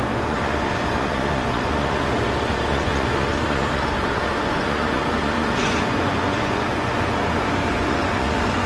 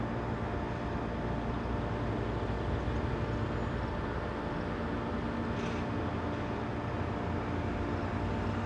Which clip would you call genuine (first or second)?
second